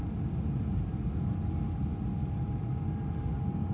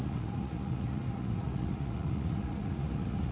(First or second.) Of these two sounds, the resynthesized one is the second